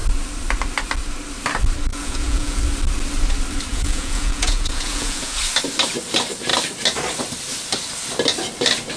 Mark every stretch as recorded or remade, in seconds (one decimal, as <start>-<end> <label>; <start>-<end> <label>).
0.0-1.9 recorded; 1.9-2.6 remade; 2.6-3.7 recorded; 3.7-5.4 remade; 5.4-9.0 recorded